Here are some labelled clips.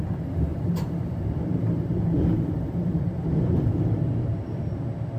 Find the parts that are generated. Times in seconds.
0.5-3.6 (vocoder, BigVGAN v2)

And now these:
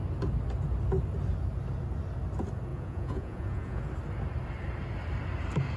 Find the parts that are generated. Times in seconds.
2.7-3.8 (vocoder, Vocos)

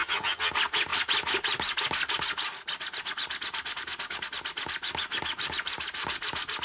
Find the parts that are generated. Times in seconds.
0.0-0.5 (vocoder, HiFi-GAN)

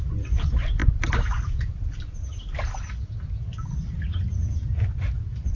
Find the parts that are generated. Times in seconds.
none

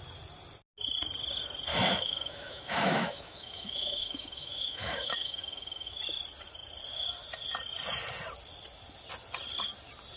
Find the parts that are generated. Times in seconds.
1.7-6.0 (autoencoder, DAC-VAE)

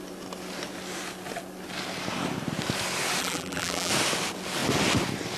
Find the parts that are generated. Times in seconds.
3.2-3.9 (vocoder, BigVGAN v2)

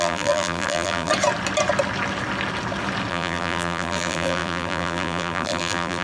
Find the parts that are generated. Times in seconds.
0.0-1.1 (vocoder, BigVGAN v2); 3.1-6.0